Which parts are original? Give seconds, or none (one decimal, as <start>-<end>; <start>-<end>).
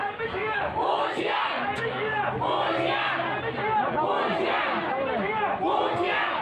2.1-5.9